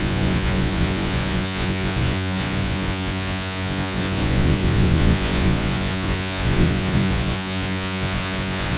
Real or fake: fake